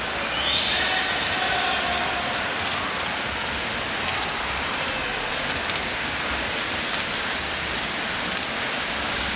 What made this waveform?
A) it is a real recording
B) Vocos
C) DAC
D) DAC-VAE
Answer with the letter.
A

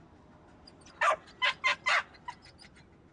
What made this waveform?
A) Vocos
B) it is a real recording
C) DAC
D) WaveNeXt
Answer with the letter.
B